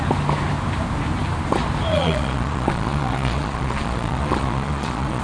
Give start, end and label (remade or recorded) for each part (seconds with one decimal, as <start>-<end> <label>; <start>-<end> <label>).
0.0-1.9 recorded; 1.9-5.2 remade